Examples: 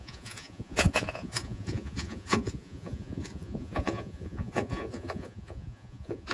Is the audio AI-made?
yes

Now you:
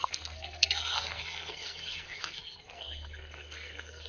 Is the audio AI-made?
yes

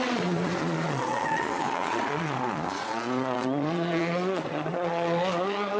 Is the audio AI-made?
yes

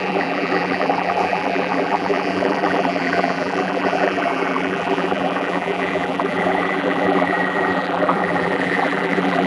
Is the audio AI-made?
yes